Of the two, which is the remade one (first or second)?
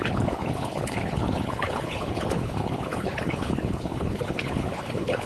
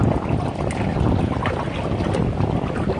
first